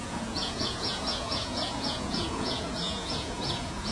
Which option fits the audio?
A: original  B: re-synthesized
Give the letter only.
B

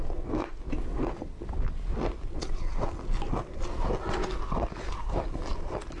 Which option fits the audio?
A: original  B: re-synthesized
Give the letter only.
A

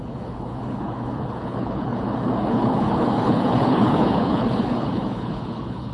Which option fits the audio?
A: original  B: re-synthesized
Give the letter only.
B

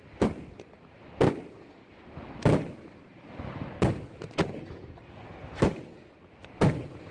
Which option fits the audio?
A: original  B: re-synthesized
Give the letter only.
A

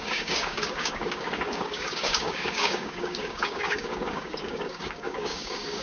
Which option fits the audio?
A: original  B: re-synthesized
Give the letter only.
B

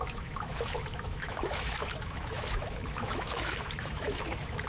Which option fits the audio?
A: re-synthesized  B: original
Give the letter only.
A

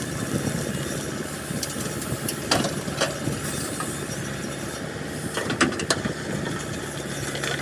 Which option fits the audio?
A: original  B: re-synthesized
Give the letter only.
A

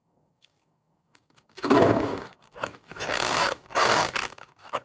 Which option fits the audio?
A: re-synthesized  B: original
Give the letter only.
A